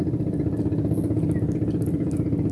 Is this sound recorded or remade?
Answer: recorded